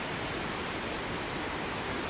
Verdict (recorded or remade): recorded